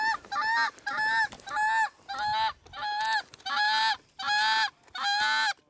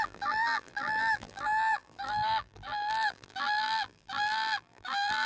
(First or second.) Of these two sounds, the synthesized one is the second